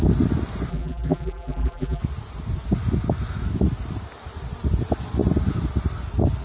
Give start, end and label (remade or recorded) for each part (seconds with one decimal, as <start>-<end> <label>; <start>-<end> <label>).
0.0-0.7 recorded; 0.7-2.0 remade; 2.0-6.4 recorded